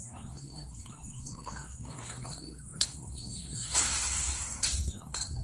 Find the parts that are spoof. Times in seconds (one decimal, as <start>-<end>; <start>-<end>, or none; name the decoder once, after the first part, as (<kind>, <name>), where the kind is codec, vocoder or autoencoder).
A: 0.0-5.4 (codec, SNAC)